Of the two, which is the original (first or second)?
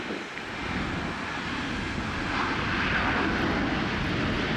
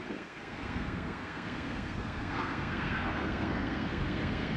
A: first